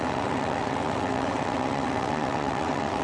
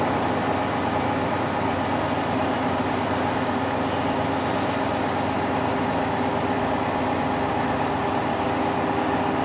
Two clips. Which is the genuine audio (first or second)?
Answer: second